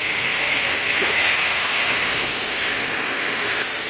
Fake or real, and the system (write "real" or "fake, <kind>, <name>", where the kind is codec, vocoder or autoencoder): fake, autoencoder, DAC-VAE